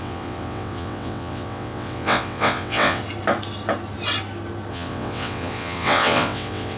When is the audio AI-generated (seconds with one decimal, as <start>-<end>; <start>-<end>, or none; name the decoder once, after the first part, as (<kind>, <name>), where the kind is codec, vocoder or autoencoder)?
0.0-3.0 (vocoder, WaveNeXt); 4.7-6.8